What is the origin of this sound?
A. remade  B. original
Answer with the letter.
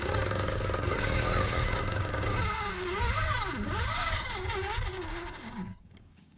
A